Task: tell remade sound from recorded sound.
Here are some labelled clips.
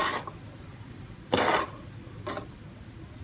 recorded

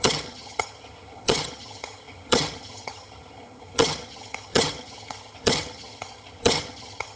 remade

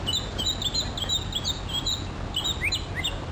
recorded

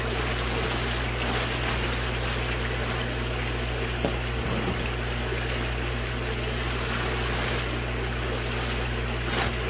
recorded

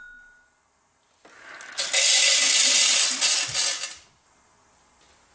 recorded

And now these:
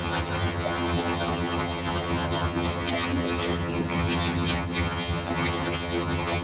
remade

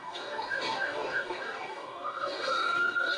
remade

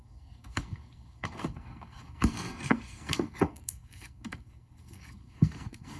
remade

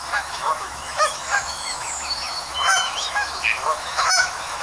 remade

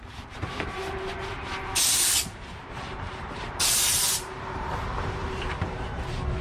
remade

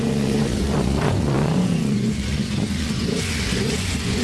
remade